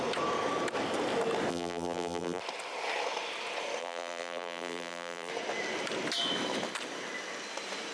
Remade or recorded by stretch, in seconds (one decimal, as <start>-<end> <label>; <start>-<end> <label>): 0.0-1.5 recorded; 1.5-2.4 remade; 2.4-3.8 recorded; 3.8-5.3 remade; 5.3-7.9 recorded